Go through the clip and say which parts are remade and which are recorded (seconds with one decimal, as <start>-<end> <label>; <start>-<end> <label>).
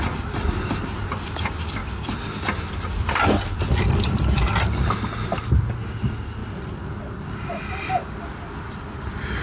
0.0-9.4 recorded